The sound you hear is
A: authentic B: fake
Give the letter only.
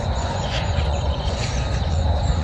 B